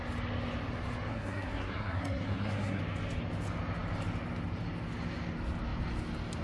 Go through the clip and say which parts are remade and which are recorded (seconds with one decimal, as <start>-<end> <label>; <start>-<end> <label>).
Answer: 0.0-1.1 recorded; 1.1-2.8 remade; 2.8-6.4 recorded